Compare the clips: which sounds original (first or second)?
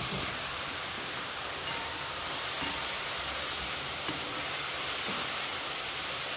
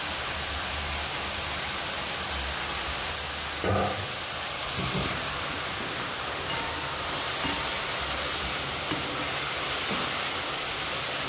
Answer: second